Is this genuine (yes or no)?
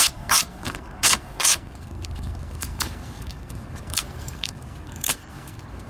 no